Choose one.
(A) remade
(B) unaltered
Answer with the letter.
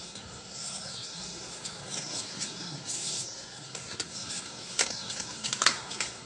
A